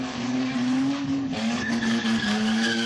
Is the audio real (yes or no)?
no